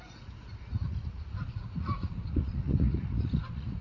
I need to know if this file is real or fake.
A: fake